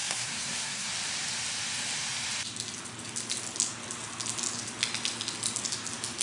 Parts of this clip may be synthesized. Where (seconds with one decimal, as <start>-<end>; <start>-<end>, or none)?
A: 0.0-0.9